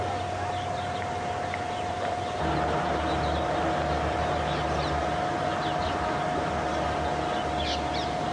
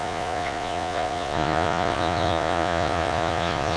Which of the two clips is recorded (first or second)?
first